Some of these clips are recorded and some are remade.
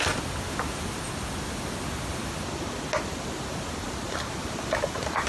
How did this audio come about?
recorded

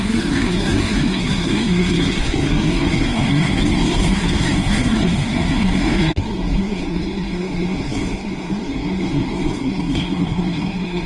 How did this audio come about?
remade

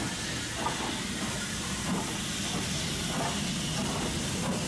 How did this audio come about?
recorded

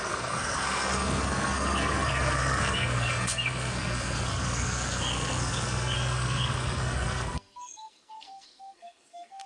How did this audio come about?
remade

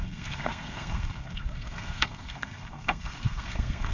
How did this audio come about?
remade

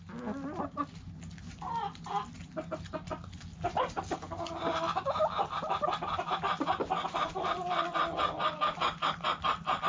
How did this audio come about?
recorded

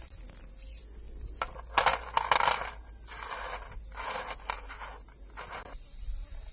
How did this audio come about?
recorded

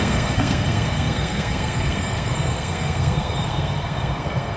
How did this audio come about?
remade